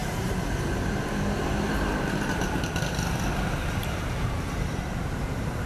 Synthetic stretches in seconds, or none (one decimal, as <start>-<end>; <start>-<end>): 0.0-1.9; 3.8-5.7